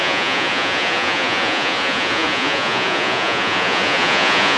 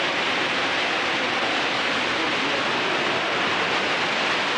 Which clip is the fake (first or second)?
first